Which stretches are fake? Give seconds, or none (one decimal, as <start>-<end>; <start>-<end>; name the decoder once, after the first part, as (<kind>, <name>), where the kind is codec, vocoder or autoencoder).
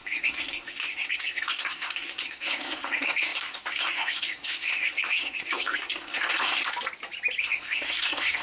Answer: 0.0-6.7 (codec, SNAC); 7.4-8.4